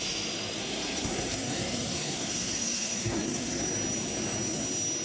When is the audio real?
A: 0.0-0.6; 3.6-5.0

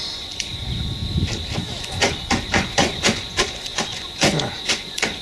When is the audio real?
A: 1.0-1.8

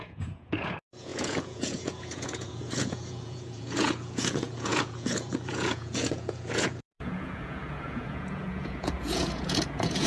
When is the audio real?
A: none

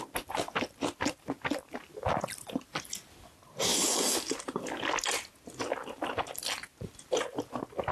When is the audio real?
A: 0.0-7.9

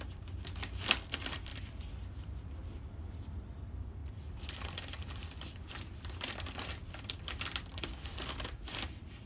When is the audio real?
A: 4.0-5.4

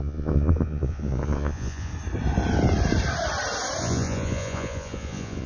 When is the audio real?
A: 1.9-3.8

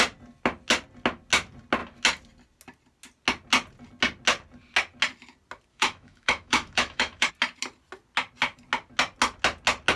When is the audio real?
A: 0.0-5.7; 7.3-10.0

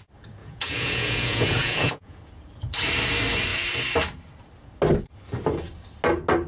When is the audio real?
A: 0.0-0.4; 2.3-6.5